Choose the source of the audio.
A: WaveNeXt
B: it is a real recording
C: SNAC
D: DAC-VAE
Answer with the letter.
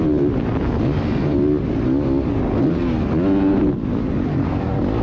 B